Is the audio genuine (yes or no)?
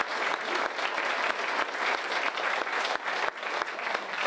yes